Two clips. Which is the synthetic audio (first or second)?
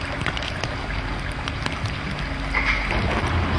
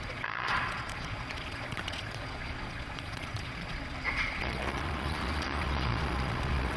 second